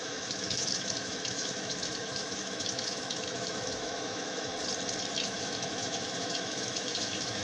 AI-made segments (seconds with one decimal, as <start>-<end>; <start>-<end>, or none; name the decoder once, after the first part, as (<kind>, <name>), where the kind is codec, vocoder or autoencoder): 0.0-4.5 (autoencoder, DAC-VAE); 5.0-7.4